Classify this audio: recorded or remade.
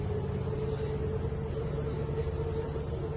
recorded